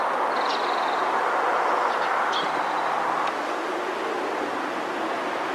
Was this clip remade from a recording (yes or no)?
no